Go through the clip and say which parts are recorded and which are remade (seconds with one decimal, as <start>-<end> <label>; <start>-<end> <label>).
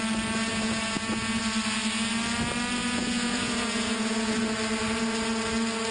0.0-0.5 recorded; 0.5-1.4 remade; 1.4-2.8 recorded; 2.8-4.4 remade; 4.4-5.9 recorded